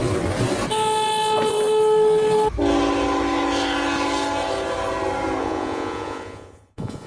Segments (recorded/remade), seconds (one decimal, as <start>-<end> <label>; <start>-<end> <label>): 0.0-5.4 recorded; 5.4-7.1 remade